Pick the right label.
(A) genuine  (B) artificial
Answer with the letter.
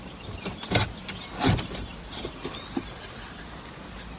A